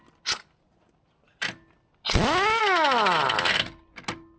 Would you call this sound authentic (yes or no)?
yes